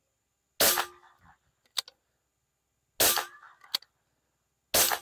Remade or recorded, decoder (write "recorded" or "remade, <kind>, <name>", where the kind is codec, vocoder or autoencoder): recorded